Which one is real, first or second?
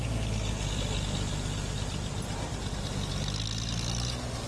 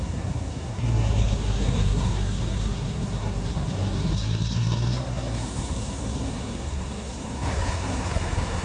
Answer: first